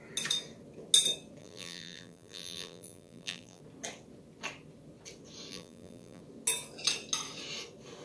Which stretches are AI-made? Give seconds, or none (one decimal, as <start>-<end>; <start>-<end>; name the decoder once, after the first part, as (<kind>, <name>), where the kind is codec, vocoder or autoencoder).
1.4-3.6 (vocoder, BigVGAN v2); 5.5-6.2